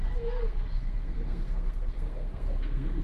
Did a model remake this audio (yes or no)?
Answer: yes